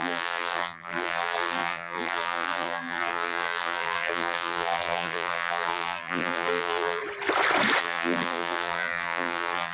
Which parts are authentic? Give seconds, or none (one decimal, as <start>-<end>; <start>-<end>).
7.0-7.8